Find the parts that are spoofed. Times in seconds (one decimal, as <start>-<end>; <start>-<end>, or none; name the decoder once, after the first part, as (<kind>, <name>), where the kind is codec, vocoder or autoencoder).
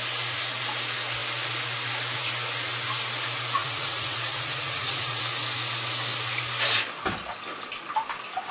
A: 3.6-5.2 (vocoder, Vocos)